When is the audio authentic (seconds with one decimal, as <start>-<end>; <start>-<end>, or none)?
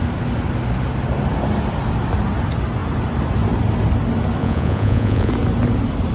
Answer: 0.0-4.4; 5.3-6.1